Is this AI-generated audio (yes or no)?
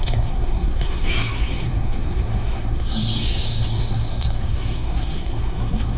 yes